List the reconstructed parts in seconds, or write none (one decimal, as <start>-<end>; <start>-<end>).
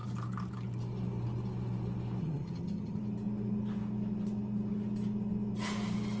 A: 2.2-3.0